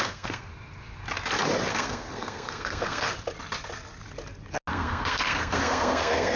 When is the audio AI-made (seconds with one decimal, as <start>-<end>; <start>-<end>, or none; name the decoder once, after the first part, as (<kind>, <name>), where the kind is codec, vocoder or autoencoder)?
0.0-0.5 (codec, SNAC); 1.7-3.1; 4.7-6.4